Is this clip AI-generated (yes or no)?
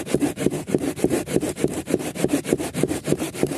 yes